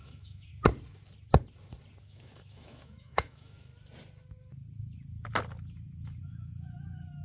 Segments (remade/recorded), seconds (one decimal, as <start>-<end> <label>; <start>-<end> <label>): 0.0-0.5 remade; 0.5-2.0 recorded; 2.0-3.7 remade; 3.7-6.2 recorded; 6.2-7.2 remade